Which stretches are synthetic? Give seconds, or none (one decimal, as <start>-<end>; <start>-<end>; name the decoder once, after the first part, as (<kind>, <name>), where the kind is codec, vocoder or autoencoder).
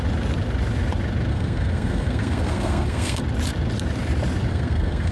1.3-3.2 (codec, SNAC); 4.5-5.1